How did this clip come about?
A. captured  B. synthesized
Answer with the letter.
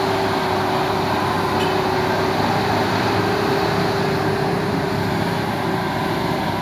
A